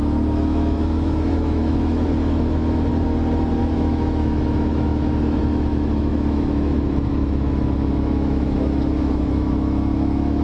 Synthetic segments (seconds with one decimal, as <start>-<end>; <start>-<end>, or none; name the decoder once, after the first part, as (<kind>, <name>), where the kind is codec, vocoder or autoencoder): 0.0-2.9 (autoencoder, DAC-VAE); 3.6-10.4